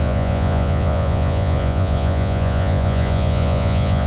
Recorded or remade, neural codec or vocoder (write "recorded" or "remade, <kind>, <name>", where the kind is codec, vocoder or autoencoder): remade, vocoder, Vocos